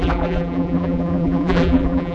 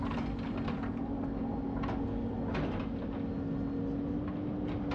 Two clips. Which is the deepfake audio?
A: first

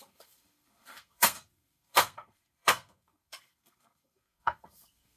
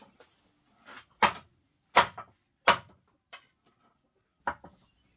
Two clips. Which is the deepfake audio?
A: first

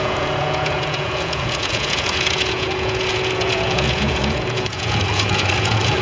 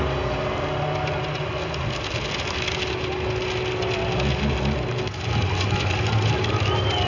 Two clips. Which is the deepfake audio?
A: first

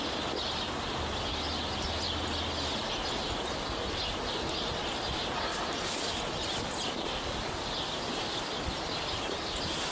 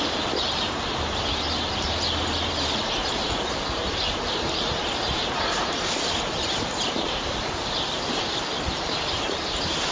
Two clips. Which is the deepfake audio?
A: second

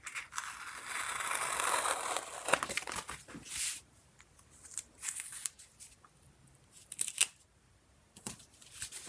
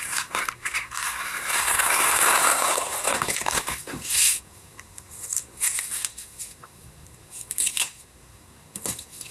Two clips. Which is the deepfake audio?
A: second